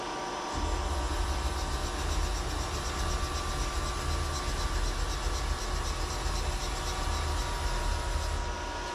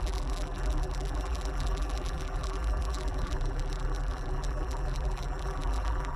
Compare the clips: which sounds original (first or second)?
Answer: first